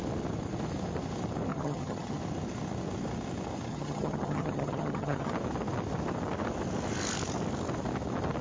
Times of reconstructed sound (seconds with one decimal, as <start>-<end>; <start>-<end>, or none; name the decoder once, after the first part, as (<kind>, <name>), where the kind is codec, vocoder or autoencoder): 1.5-2.2 (vocoder, HiFi-GAN); 3.7-5.3